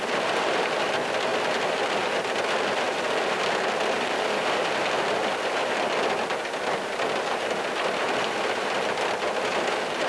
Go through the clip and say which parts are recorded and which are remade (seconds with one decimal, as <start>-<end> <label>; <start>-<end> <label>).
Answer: 0.0-10.1 recorded

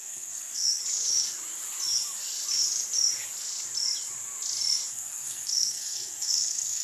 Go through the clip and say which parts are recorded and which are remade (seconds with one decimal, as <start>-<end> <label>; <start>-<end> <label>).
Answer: 0.0-0.8 remade; 0.8-4.9 recorded; 4.9-6.8 remade

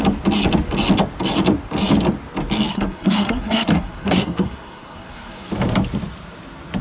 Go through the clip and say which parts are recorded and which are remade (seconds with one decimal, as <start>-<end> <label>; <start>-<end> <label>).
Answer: 0.0-2.7 recorded; 2.7-5.5 remade; 5.5-6.8 recorded

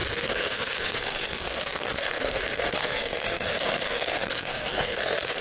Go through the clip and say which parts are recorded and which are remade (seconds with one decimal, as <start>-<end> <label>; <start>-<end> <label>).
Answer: 0.0-5.4 remade

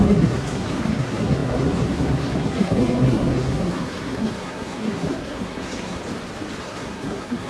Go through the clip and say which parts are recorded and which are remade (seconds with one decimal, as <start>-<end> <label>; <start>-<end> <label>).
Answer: 0.0-6.0 remade; 6.0-6.6 recorded; 6.6-7.5 remade

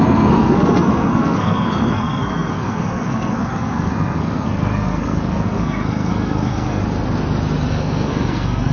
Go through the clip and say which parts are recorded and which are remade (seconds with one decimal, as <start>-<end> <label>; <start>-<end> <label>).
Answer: 0.0-6.8 remade; 6.8-7.7 recorded; 7.7-8.7 remade

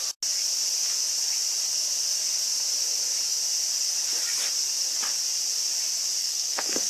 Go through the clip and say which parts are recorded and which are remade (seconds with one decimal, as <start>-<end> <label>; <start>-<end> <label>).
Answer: 0.0-6.2 recorded; 6.2-6.9 remade